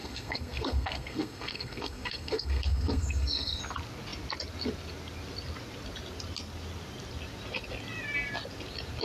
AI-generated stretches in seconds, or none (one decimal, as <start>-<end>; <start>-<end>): 0.0-3.6